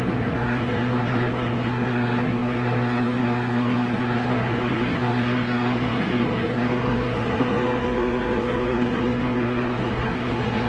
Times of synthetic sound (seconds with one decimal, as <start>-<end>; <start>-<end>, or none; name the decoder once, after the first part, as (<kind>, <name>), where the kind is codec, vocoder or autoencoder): 0.0-10.7 (codec, SNAC)